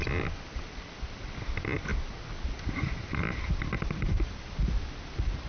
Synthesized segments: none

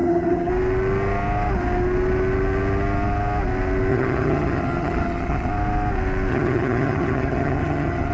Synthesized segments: 0.0-0.5 (vocoder, HiFi-GAN); 3.9-5.5; 6.3-8.1

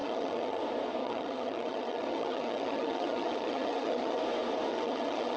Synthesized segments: 0.0-0.6 (vocoder, HiFi-GAN); 1.0-4.2; 4.7-5.4

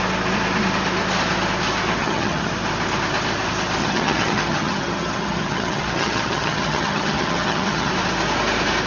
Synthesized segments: 2.0-2.5 (vocoder, HiFi-GAN); 3.8-7.9

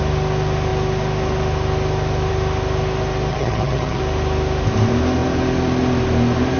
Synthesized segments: 3.3-4.0 (vocoder, HiFi-GAN)

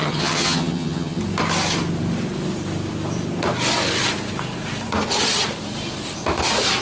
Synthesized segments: 0.0-1.2 (vocoder, HiFi-GAN)